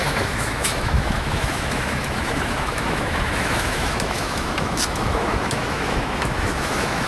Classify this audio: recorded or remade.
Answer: remade